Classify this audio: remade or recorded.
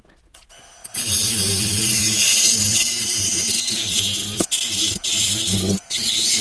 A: recorded